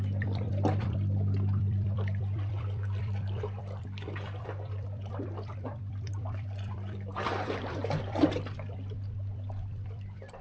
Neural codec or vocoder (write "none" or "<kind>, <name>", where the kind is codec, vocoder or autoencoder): vocoder, BigVGAN v2